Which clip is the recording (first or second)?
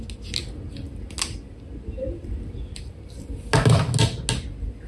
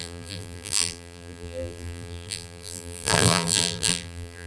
first